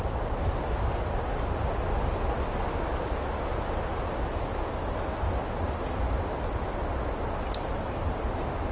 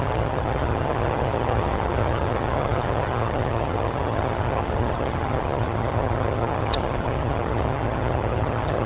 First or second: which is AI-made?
second